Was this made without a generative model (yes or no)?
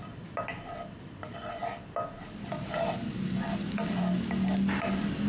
yes